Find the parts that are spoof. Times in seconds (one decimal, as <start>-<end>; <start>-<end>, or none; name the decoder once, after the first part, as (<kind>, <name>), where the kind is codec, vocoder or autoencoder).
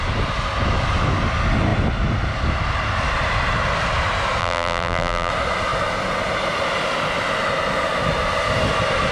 4.4-5.3 (vocoder, BigVGAN v2)